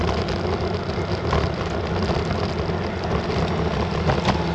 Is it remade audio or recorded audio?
recorded